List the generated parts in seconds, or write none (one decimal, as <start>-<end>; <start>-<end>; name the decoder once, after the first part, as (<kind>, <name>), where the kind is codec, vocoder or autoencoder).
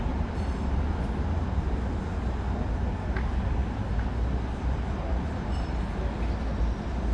none